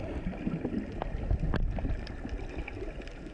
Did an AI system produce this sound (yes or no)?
no